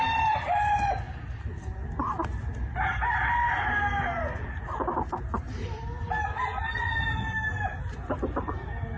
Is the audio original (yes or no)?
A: yes